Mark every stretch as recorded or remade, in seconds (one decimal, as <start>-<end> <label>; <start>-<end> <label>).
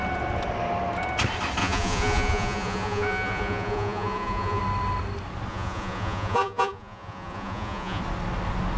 0.0-1.6 recorded; 1.6-4.6 remade; 4.6-5.5 recorded; 5.5-8.0 remade; 8.0-8.8 recorded